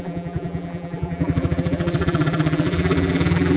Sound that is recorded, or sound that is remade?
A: remade